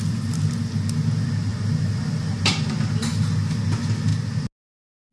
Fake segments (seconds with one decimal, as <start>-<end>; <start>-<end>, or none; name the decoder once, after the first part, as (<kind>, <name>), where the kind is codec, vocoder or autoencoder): none